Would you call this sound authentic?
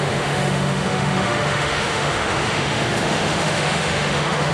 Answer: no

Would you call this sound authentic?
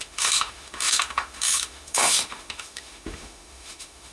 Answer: no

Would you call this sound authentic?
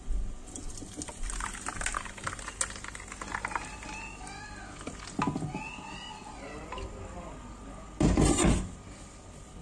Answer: yes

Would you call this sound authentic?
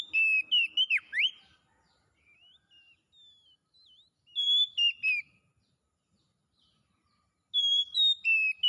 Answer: yes